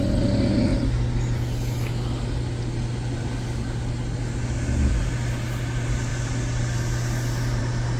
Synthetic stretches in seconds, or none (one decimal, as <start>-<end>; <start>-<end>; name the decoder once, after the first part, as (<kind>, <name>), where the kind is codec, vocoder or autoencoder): none